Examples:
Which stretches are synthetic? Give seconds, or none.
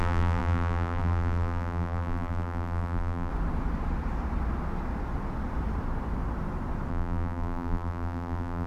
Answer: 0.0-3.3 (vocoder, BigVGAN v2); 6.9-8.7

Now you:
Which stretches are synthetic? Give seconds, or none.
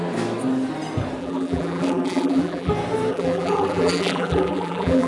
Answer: 1.2-2.7 (vocoder, BigVGAN v2); 3.1-5.1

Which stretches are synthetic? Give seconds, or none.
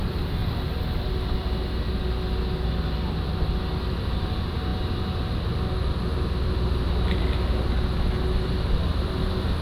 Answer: none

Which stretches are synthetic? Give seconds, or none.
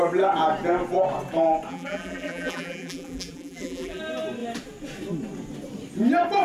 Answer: 1.7-4.0 (vocoder, BigVGAN v2)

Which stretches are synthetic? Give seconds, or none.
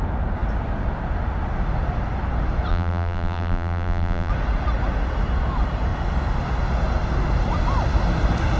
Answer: 2.7-4.3 (vocoder, BigVGAN v2)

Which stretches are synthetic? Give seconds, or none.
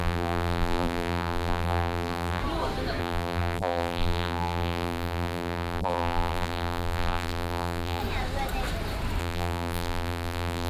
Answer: 0.0-2.4 (vocoder, BigVGAN v2); 3.0-8.0; 9.2-10.7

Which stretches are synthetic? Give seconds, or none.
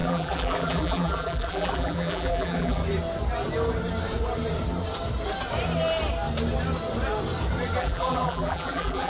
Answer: 0.0-2.8 (vocoder, BigVGAN v2); 7.8-9.1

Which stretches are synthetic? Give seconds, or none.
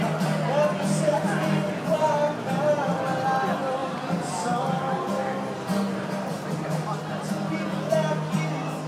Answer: 3.8-7.0 (vocoder, BigVGAN v2)